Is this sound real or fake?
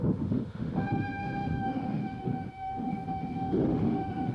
fake